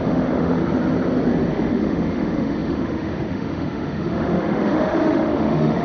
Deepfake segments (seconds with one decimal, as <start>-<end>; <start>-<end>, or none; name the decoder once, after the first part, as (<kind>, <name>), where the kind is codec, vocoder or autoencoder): 0.0-0.6 (autoencoder, DAC-VAE); 1.5-5.8